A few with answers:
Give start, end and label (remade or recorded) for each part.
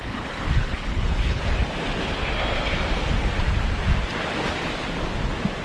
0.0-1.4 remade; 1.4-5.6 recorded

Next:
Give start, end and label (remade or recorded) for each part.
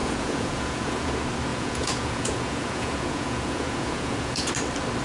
0.0-1.1 remade; 1.1-1.5 recorded; 1.5-4.5 remade; 4.5-5.0 recorded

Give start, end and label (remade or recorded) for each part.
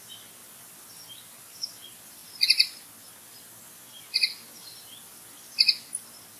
0.0-0.4 remade; 0.4-1.1 recorded; 1.1-2.2 remade; 2.2-3.6 recorded; 3.6-5.1 remade; 5.1-6.0 recorded; 6.0-6.4 remade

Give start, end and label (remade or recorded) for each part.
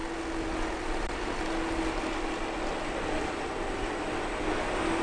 0.0-5.0 recorded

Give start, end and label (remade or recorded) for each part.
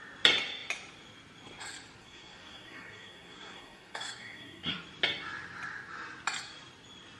0.0-2.0 recorded; 2.0-4.7 remade; 4.7-7.2 recorded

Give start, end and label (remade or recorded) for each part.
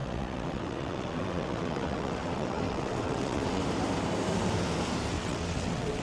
0.0-3.6 remade; 3.6-5.1 recorded; 5.1-6.0 remade